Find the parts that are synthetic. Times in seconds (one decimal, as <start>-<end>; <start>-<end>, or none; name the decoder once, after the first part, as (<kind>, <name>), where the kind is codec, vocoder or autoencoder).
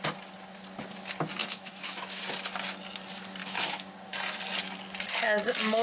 1.4-2.2 (autoencoder, DAC-VAE); 3.4-3.9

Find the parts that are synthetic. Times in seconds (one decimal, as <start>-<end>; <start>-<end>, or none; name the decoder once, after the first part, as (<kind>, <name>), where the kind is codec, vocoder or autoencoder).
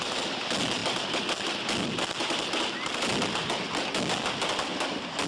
none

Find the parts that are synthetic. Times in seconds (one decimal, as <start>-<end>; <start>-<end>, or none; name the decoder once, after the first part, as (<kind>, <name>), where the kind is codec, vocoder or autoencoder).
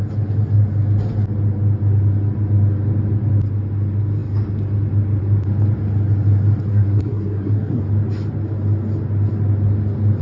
6.7-7.8 (codec, SNAC)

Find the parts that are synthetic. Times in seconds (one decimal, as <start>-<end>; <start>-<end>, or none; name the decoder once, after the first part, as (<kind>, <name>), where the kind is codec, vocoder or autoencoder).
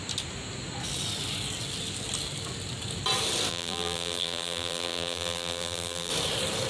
3.5-6.1 (vocoder, BigVGAN v2)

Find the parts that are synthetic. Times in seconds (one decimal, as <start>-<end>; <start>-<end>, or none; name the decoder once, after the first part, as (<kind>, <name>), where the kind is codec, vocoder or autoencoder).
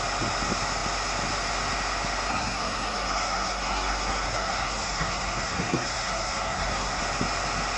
2.3-7.0 (codec, SNAC)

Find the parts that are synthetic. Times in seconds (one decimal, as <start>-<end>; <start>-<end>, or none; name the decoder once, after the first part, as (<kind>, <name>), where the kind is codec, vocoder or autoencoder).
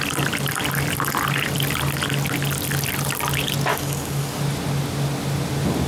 3.7-4.4 (codec, DAC)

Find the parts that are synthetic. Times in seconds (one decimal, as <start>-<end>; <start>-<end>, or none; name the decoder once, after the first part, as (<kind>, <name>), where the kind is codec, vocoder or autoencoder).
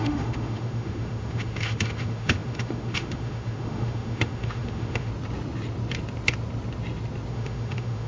0.0-5.1 (autoencoder, DAC-VAE); 7.3-8.1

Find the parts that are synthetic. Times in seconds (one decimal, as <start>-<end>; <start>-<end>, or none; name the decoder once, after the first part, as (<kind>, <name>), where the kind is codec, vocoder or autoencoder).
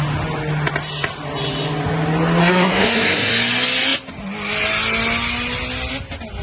2.4-3.3 (codec, SNAC)